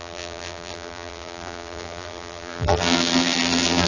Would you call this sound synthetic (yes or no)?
yes